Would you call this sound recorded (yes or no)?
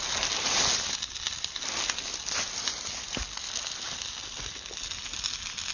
yes